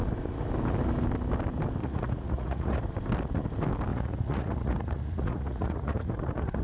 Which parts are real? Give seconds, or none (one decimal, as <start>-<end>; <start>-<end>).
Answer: 0.0-1.8; 2.8-3.9